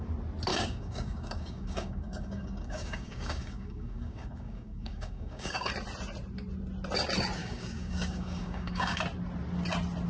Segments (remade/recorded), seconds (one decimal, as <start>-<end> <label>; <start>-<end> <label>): 0.0-0.5 recorded; 0.5-5.7 remade; 5.7-7.4 recorded; 7.4-9.0 remade; 9.0-10.1 recorded